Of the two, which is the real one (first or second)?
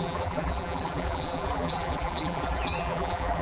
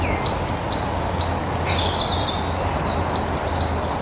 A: second